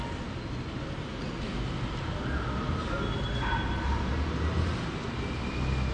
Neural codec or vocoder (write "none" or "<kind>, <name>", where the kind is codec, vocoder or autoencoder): none